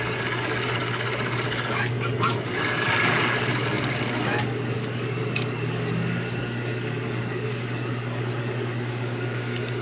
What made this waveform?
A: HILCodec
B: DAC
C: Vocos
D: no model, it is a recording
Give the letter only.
B